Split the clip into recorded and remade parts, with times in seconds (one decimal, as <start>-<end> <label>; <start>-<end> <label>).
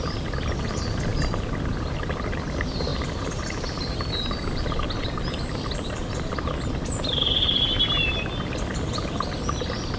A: 0.0-10.0 recorded